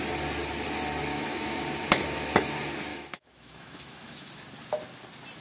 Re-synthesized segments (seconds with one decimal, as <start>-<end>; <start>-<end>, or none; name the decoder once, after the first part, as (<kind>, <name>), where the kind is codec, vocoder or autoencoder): 1.1-1.6 (autoencoder, DAC-VAE); 2.9-4.3